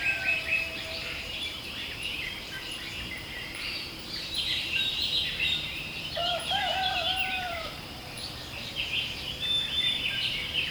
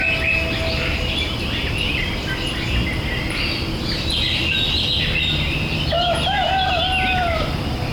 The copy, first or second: first